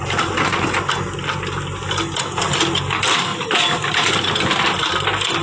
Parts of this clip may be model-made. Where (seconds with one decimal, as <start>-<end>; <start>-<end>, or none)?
none